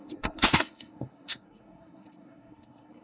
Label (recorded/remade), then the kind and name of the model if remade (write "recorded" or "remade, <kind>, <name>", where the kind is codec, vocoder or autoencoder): remade, codec, SNAC